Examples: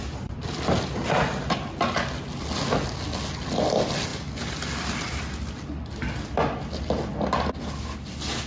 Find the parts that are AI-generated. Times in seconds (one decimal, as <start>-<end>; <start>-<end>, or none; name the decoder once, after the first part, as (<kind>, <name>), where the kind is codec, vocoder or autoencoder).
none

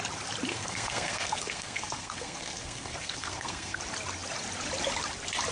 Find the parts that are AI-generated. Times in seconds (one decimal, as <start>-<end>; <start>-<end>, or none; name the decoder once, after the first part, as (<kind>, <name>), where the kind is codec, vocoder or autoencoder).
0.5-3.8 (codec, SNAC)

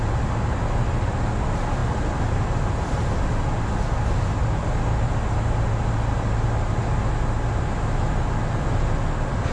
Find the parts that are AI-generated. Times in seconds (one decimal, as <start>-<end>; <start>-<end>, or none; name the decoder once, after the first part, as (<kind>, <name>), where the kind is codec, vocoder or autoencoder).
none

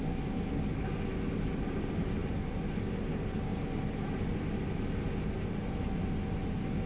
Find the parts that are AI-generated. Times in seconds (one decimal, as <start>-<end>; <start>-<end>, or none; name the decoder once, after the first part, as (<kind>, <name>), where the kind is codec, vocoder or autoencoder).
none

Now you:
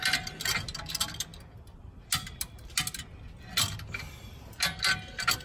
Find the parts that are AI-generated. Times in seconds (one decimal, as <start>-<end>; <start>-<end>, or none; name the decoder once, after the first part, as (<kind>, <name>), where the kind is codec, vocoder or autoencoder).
none

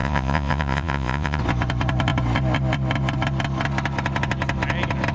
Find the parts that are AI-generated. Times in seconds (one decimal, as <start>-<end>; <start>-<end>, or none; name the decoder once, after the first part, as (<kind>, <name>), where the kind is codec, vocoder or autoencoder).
0.0-1.4 (vocoder, Vocos)

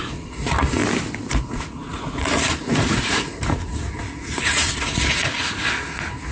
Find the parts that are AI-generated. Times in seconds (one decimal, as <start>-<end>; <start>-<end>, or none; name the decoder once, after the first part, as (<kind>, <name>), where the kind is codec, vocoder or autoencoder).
0.0-0.8 (vocoder, Vocos); 1.3-6.3